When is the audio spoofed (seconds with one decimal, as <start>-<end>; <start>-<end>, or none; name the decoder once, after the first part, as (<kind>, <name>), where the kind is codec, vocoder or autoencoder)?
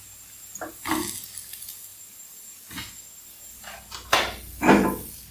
none